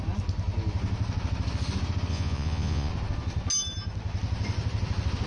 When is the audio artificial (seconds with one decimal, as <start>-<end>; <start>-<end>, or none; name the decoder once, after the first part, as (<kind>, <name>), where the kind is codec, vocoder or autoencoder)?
2.1-2.9 (vocoder, Vocos)